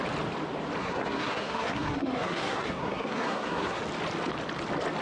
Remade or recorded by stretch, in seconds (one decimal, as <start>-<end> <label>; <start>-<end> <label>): 0.0-0.8 recorded; 0.8-3.8 remade; 3.8-5.0 recorded